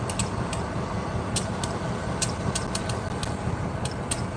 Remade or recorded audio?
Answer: recorded